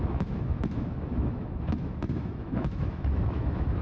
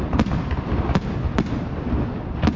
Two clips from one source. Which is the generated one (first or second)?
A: first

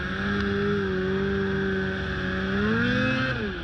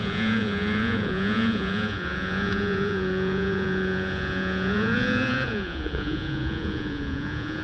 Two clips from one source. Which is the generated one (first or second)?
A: second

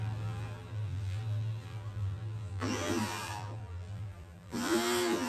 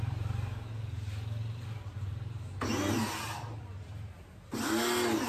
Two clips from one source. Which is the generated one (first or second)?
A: first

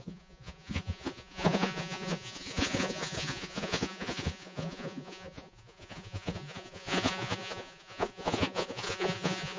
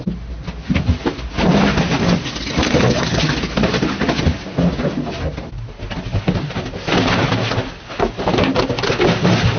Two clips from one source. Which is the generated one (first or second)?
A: first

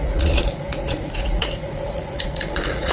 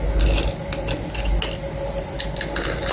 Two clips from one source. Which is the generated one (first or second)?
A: first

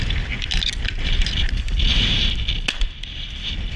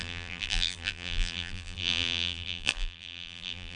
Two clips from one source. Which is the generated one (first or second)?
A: second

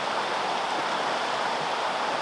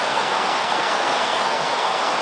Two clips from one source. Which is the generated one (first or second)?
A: second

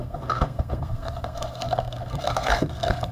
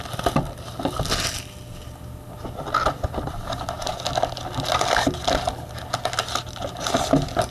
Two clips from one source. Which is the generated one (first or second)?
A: first